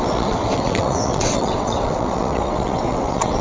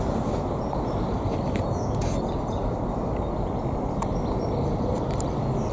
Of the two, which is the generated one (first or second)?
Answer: first